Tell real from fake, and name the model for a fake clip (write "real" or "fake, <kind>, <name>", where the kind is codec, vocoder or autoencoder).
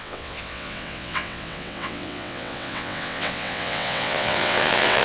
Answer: fake, vocoder, WaveNeXt